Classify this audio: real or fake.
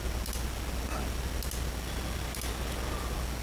real